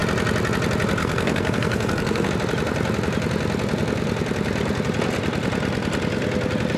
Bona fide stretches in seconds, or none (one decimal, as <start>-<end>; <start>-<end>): 0.0-1.0; 2.3-6.8